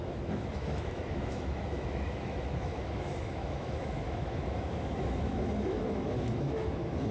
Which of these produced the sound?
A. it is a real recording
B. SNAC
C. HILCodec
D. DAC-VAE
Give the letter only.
D